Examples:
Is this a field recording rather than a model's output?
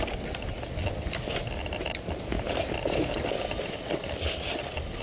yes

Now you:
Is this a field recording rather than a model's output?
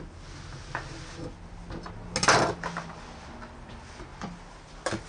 yes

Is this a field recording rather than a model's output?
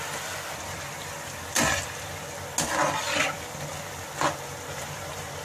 yes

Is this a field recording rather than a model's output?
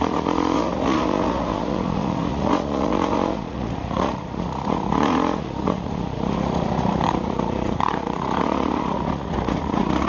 no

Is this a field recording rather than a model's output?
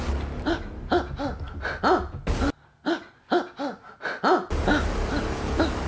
yes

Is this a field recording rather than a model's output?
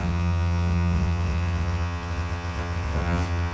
no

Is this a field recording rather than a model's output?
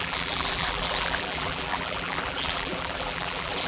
no